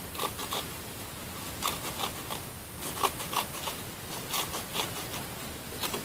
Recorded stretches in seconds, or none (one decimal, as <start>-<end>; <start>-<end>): 0.0-0.4; 2.1-2.6; 5.6-6.0